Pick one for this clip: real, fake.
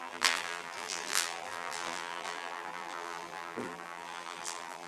fake